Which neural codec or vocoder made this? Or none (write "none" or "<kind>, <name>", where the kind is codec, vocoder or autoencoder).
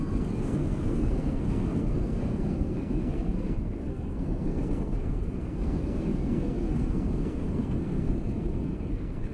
codec, SNAC